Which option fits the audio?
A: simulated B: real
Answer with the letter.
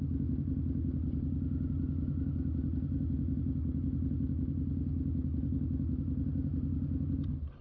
B